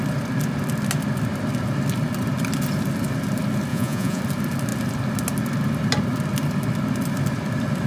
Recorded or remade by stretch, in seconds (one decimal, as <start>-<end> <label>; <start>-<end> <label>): 0.0-3.7 recorded; 3.7-4.2 remade; 4.2-7.9 recorded

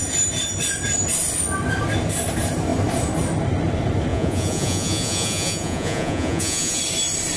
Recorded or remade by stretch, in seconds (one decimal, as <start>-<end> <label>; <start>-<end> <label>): 0.0-4.1 recorded; 4.1-6.8 remade; 6.8-7.4 recorded

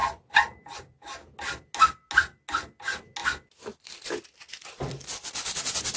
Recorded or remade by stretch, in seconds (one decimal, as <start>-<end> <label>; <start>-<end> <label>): 0.0-6.0 recorded

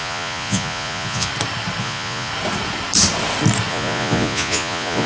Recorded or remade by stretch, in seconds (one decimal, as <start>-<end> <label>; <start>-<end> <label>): 0.0-1.3 remade; 1.3-1.8 recorded; 1.8-2.3 remade; 2.3-3.7 recorded; 3.7-5.1 remade